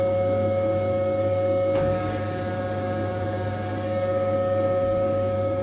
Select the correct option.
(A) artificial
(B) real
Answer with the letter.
A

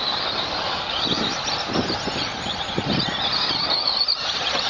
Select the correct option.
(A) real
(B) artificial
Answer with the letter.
A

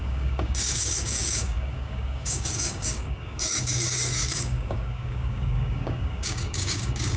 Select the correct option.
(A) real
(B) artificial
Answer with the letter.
B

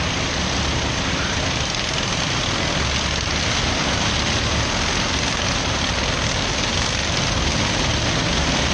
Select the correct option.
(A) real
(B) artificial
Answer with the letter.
A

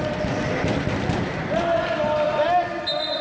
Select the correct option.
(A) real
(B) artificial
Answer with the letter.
A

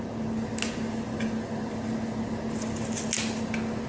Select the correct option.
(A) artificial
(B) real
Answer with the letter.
B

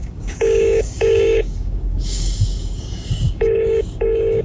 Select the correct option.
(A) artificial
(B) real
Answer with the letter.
A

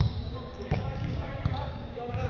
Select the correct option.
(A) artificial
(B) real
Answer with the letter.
A